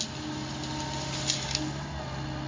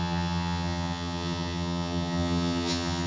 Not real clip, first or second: second